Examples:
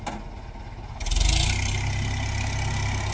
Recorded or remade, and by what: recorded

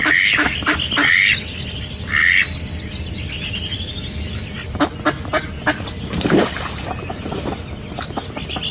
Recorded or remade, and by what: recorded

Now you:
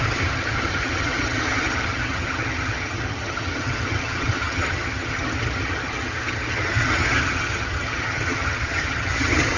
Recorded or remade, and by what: remade, vocoder, HiFi-GAN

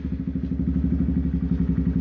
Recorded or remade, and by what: recorded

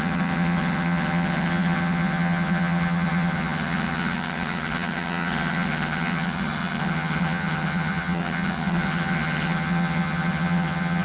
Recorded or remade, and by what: remade, vocoder, HiFi-GAN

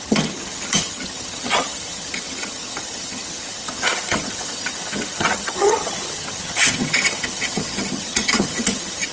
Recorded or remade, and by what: remade, vocoder, HiFi-GAN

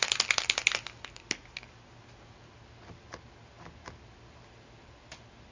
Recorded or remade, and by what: recorded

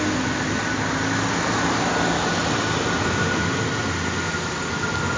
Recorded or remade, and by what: recorded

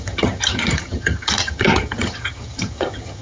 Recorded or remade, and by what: remade, vocoder, HiFi-GAN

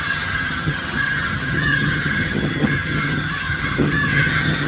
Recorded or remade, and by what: remade, vocoder, HiFi-GAN